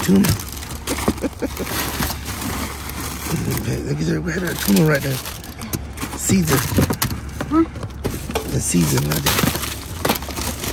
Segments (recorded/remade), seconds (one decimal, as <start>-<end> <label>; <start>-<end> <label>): 0.0-4.5 recorded; 4.5-5.2 remade; 5.2-8.6 recorded; 8.6-9.4 remade; 9.4-10.7 recorded